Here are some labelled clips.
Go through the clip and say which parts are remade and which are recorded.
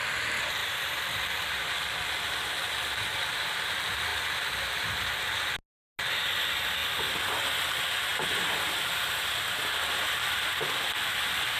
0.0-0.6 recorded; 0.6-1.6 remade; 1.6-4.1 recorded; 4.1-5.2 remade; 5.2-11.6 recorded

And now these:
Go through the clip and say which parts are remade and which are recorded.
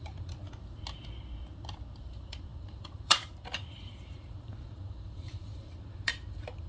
0.0-0.4 remade; 0.4-2.0 recorded; 2.0-6.7 remade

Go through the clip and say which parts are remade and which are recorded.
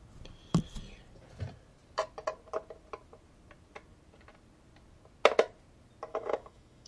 0.0-6.1 recorded; 6.1-6.9 remade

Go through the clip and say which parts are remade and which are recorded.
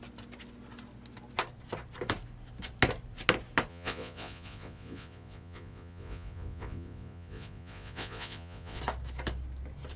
0.0-3.7 recorded; 3.7-8.8 remade; 8.8-10.0 recorded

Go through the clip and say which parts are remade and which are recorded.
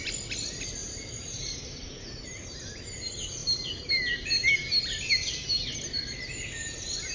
0.0-0.8 recorded; 0.8-2.7 remade; 2.7-3.4 recorded; 3.4-5.1 remade; 5.1-7.1 recorded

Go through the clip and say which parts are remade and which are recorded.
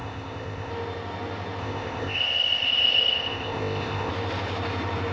0.0-0.7 remade; 0.7-1.6 recorded; 1.6-4.1 remade; 4.1-5.1 recorded